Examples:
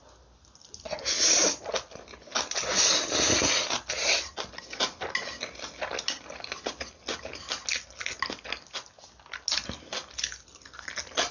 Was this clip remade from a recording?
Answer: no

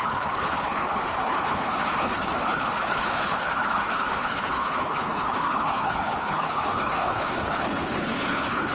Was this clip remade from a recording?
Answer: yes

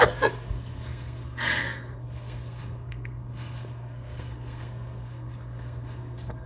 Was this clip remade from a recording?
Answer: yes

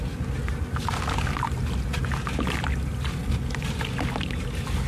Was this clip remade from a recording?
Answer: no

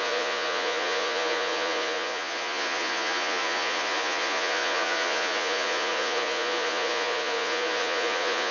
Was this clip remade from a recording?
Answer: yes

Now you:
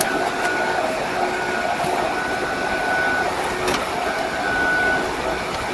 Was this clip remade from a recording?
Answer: no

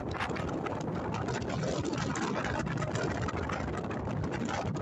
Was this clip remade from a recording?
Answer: no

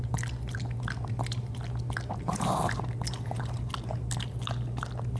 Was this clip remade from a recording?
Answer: no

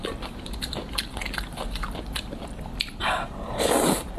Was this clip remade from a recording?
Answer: yes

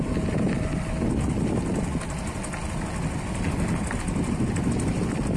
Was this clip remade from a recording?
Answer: no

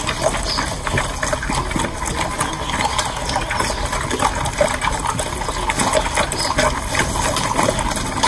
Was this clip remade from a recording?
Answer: no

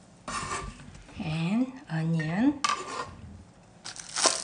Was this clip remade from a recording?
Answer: no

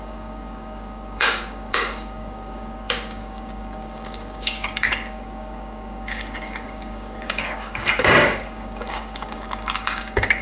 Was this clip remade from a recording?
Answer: yes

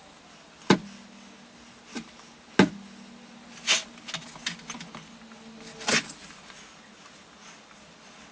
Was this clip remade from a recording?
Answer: no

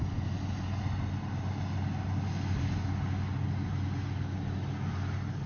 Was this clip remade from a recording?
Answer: no